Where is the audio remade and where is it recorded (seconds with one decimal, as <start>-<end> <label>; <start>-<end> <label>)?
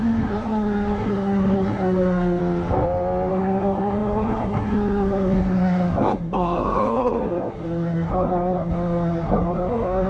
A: 0.0-2.4 remade; 2.4-3.3 recorded; 3.3-10.1 remade